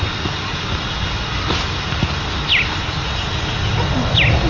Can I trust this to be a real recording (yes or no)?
yes